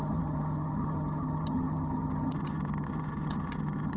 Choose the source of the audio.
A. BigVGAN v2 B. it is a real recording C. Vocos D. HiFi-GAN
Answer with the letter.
D